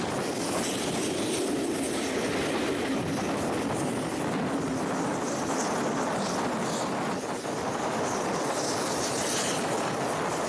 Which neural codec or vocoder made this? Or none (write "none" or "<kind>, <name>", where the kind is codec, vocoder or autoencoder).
none